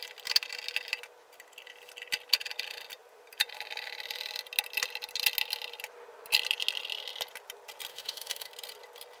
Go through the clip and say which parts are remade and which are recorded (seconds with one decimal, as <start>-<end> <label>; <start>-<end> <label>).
0.0-7.9 recorded; 7.9-8.5 remade; 8.5-9.2 recorded